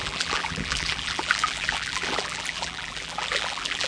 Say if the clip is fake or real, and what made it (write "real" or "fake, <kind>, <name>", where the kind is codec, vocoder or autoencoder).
fake, vocoder, BigVGAN v2